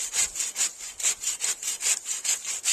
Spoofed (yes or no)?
no